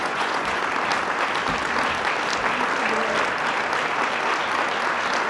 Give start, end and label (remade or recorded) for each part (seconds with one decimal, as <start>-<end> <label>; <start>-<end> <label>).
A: 0.0-0.6 remade; 0.6-5.3 recorded